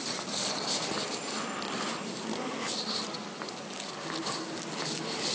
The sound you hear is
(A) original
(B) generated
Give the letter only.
A